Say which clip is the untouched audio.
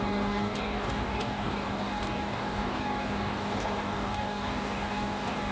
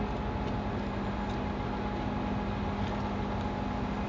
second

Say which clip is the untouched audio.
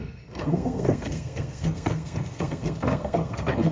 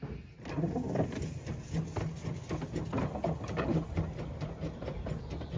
second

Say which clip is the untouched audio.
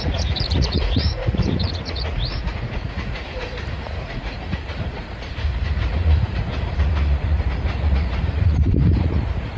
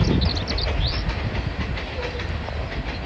second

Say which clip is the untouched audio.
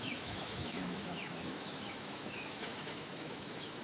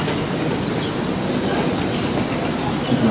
second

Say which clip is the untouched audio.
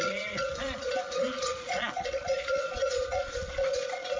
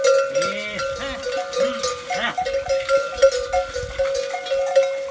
second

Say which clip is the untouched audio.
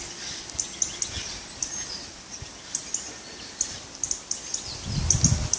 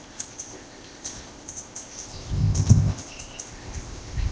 first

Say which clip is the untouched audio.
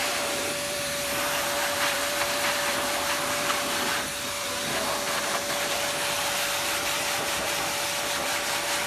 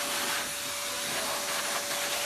second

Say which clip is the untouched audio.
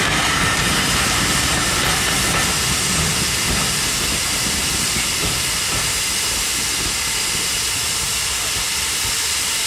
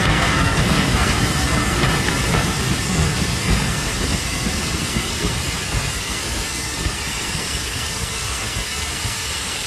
first